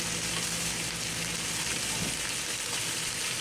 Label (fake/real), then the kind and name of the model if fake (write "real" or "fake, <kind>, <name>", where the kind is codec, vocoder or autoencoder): real